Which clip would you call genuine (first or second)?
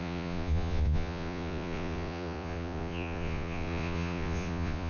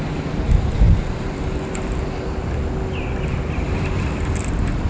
second